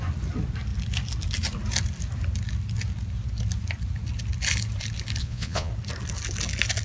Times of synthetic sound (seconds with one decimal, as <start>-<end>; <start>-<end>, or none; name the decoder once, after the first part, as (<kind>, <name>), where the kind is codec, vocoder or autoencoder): 5.2-5.7 (vocoder, Vocos)